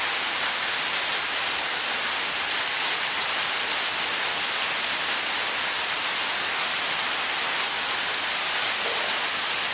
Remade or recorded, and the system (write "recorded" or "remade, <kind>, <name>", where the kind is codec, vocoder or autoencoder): recorded